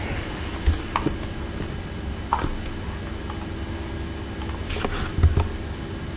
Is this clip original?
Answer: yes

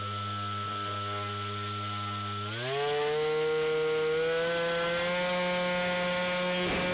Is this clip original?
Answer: yes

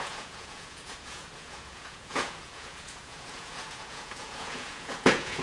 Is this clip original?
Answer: no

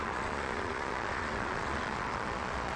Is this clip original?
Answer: no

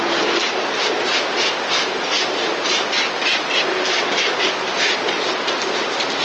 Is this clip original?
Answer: yes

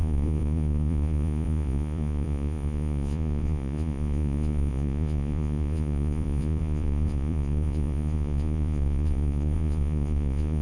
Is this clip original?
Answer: no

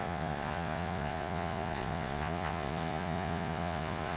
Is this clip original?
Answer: no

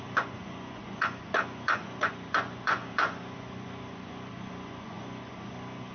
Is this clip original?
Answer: no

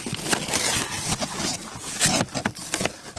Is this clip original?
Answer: yes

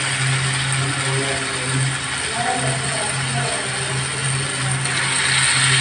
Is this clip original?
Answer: yes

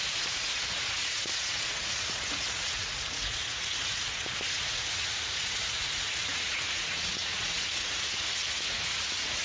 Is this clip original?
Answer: no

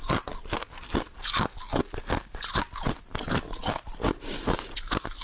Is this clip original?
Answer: yes